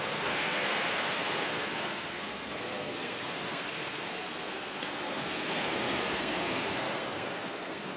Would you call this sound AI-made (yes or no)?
yes